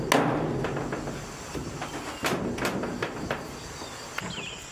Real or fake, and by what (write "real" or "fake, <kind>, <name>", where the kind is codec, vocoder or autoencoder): real